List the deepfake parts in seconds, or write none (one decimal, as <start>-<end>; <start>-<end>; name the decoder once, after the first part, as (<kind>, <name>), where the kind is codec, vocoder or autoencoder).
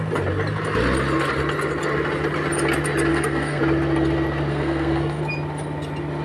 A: 3.1-3.6 (codec, SNAC); 4.5-5.2